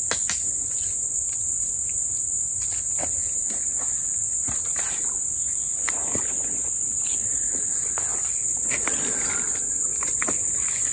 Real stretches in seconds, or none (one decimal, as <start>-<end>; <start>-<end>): 0.0-10.9